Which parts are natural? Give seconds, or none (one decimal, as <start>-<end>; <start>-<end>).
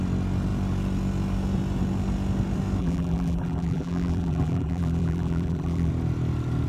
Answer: 0.0-2.8; 5.9-6.7